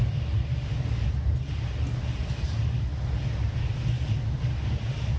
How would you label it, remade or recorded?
recorded